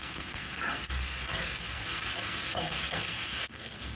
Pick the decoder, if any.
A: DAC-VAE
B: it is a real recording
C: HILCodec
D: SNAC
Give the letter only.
D